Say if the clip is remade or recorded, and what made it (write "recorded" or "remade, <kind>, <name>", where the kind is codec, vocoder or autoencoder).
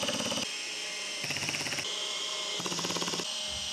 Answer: recorded